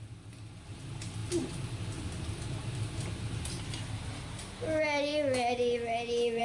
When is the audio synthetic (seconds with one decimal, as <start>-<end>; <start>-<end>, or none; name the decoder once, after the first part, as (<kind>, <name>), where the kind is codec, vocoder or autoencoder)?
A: none